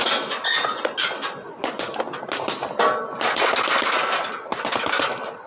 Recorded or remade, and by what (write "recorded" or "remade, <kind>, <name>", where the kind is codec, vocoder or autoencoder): recorded